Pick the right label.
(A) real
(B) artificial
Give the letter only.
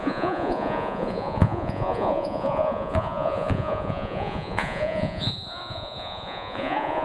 B